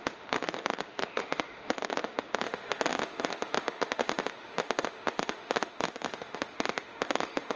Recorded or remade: remade